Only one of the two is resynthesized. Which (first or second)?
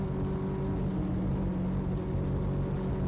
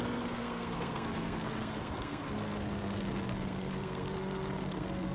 second